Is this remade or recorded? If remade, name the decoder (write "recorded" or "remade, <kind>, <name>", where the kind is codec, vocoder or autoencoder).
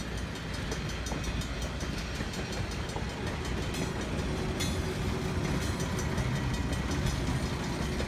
recorded